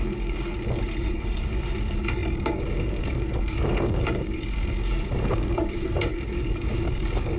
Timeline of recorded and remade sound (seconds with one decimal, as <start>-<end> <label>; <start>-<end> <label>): 0.0-0.5 remade; 0.5-1.1 recorded; 1.1-7.4 remade